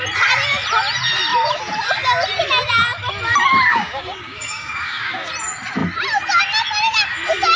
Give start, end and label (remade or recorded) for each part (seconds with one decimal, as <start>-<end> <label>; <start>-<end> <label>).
0.0-3.7 recorded; 3.7-5.3 remade; 5.3-7.6 recorded